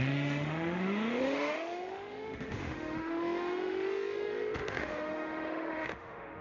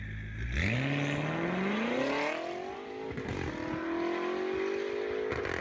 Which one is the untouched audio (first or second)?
second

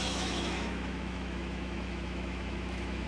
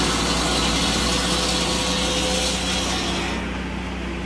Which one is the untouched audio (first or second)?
second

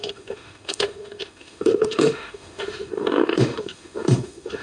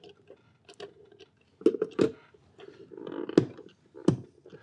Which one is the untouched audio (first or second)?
second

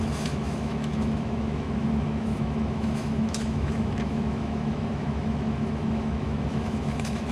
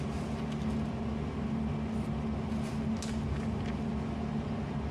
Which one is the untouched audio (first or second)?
second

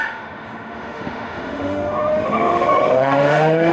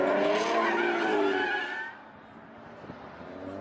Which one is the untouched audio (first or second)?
second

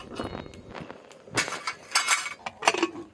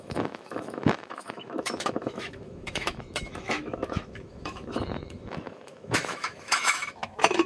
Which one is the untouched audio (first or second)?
first